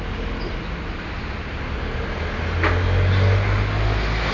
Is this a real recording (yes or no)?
yes